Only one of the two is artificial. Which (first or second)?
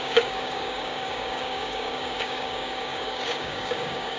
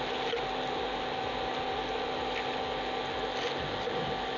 first